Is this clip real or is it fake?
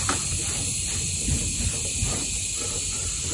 real